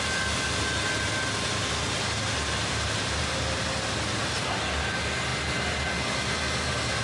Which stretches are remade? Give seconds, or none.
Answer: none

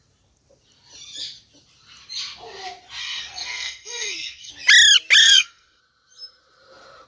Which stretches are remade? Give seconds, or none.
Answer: 3.0-4.5; 5.2-5.8

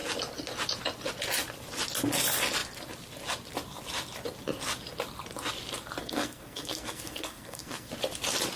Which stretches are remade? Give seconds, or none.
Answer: 6.0-7.9

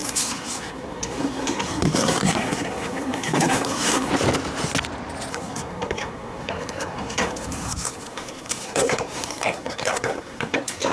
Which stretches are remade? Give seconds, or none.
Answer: 0.0-4.1; 5.3-10.9

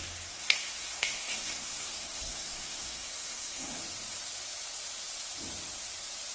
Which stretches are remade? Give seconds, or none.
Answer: 0.0-3.8

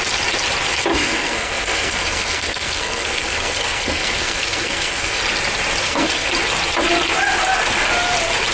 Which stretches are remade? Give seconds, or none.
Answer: 0.9-5.2; 5.8-6.3

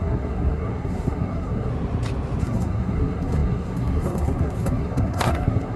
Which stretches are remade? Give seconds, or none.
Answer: 0.0-1.7; 2.4-5.8